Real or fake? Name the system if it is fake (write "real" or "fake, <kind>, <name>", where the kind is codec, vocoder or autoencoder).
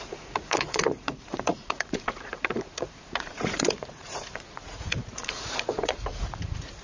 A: fake, vocoder, Vocos